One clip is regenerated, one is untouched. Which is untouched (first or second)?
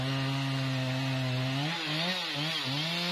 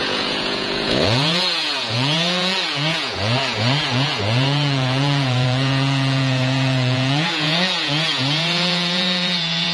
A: first